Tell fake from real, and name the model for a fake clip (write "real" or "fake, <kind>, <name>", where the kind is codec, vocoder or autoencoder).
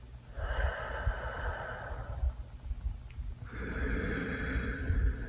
real